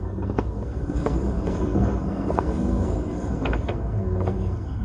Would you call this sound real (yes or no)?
no